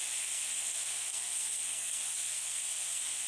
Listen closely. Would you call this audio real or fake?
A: fake